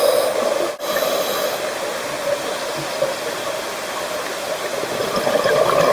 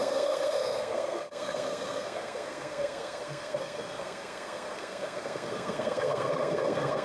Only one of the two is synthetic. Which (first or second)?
second